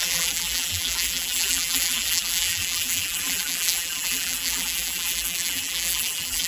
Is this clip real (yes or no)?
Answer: no